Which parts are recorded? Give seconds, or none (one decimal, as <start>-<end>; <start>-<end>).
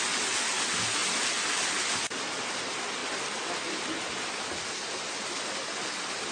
0.0-6.3